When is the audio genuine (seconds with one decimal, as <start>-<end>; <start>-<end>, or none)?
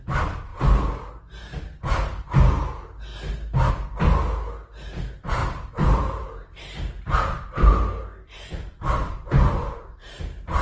0.0-5.4; 10.2-10.6